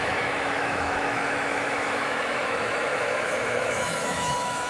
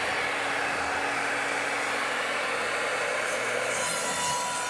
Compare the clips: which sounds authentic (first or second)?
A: second